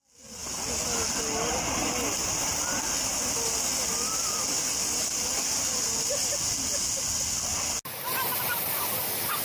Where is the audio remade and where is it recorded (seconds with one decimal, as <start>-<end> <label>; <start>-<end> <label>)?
0.0-9.4 recorded